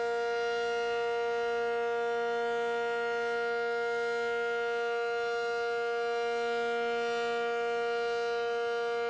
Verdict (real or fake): real